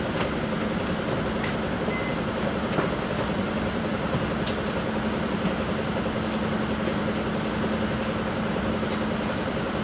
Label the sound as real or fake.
real